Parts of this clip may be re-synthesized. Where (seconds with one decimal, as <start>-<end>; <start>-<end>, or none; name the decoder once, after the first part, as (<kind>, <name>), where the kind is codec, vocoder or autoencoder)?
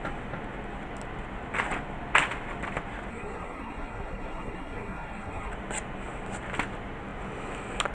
3.1-5.5 (codec, SNAC)